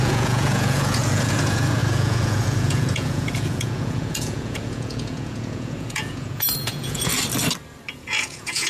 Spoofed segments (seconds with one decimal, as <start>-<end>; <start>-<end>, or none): 0.0-7.1; 7.9-8.7

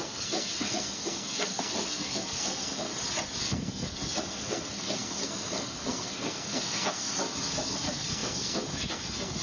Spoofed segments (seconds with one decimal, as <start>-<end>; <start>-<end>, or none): 0.0-2.9; 3.4-9.4